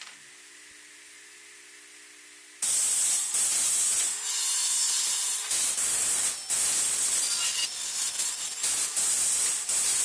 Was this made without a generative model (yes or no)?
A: yes